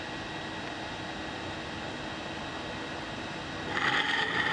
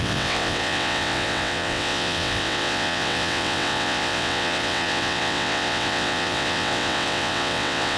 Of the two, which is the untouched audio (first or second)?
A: first